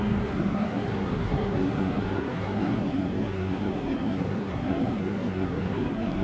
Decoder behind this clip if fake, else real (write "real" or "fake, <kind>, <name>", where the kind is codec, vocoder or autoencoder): fake, codec, SNAC